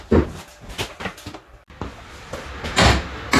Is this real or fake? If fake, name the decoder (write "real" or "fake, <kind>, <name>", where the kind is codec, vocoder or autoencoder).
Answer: real